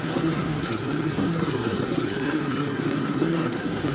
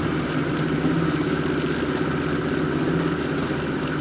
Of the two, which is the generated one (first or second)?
first